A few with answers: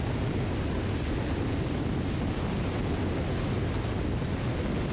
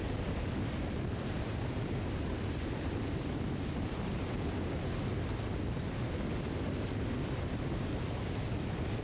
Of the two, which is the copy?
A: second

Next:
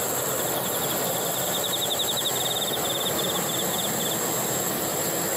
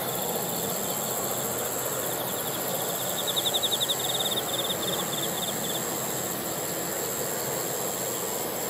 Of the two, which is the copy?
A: first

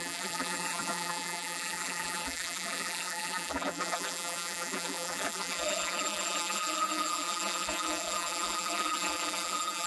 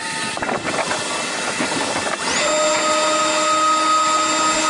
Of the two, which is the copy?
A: first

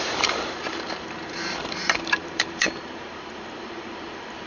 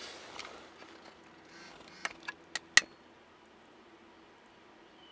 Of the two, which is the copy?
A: first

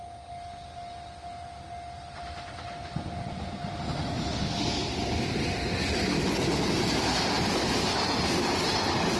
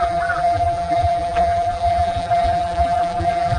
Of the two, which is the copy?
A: second